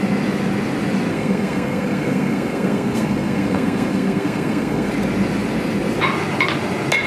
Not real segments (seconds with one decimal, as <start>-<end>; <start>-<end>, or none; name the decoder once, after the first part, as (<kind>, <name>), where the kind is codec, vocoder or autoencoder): 1.1-4.9 (codec, SNAC)